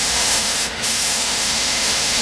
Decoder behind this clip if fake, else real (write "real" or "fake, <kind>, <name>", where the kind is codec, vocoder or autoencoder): fake, autoencoder, DAC-VAE